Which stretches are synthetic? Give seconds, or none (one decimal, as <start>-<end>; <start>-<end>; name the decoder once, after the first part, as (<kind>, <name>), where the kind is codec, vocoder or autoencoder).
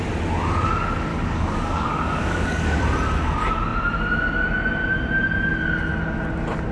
1.1-2.8 (codec, DAC)